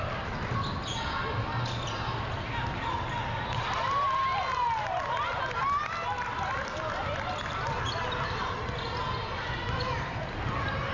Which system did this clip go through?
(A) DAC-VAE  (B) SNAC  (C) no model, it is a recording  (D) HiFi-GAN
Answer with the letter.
C